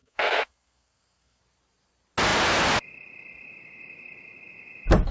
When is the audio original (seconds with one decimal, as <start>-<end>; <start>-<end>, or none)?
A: 1.4-5.1